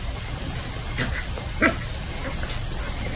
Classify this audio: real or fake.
real